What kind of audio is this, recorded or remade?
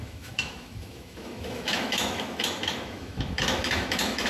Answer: remade